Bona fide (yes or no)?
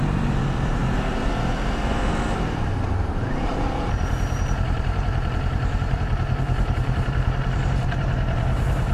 no